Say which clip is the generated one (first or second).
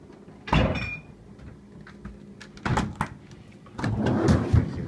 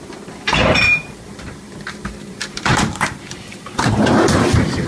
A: second